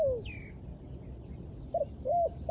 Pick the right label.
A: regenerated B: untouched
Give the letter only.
B